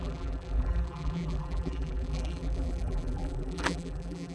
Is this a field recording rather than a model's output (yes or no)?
no